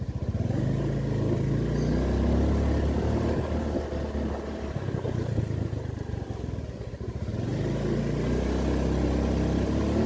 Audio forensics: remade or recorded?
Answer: recorded